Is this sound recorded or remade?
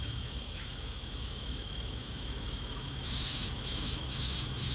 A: remade